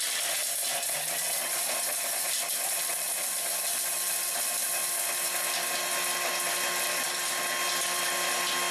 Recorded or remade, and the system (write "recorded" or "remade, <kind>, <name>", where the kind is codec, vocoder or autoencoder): recorded